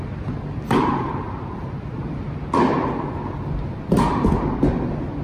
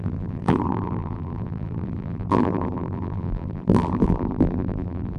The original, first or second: first